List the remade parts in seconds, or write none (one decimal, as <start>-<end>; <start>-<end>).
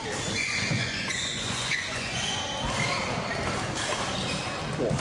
0.4-2.4